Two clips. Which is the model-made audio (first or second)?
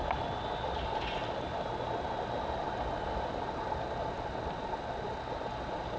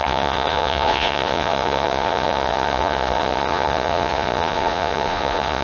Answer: second